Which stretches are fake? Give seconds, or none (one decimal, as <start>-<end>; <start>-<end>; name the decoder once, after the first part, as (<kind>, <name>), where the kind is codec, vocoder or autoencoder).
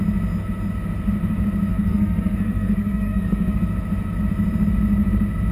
1.7-3.6 (codec, SNAC)